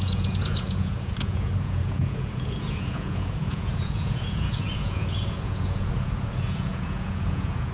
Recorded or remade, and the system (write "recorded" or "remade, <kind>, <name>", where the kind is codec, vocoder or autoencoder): remade, vocoder, Vocos